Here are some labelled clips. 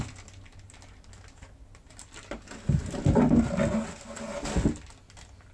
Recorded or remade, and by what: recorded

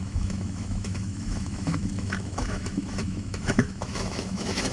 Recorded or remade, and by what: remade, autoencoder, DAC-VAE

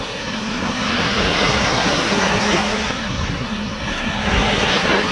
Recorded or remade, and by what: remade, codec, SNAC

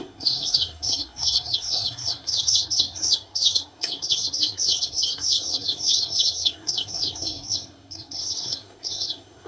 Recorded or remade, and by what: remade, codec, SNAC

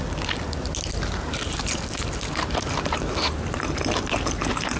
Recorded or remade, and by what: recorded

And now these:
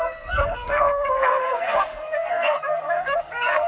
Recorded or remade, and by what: remade, codec, SNAC